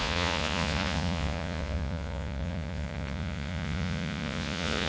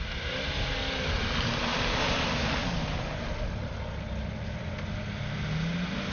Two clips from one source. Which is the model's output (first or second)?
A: first